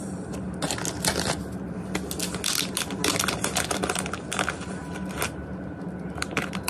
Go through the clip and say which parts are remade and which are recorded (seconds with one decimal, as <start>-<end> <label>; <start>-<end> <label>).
0.0-6.7 recorded